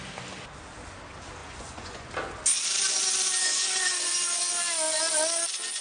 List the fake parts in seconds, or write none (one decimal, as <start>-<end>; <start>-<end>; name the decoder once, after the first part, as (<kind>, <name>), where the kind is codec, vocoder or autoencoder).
1.4-2.1 (vocoder, Vocos); 3.4-4.5